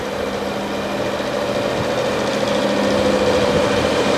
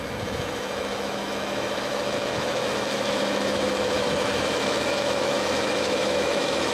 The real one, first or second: first